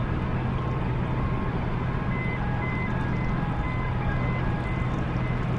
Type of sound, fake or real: real